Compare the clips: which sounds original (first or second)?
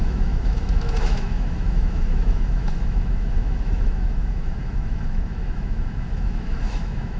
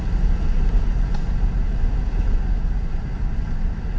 second